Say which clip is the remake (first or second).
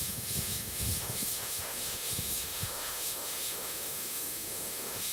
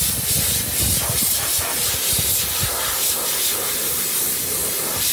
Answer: first